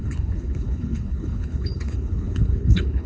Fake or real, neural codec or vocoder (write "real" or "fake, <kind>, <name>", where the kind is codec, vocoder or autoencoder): fake, codec, HILCodec